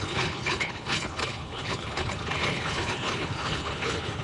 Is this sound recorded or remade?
remade